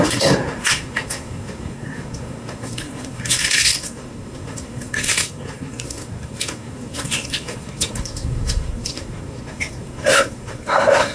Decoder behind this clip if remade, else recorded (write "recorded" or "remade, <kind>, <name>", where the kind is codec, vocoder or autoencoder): remade, codec, SNAC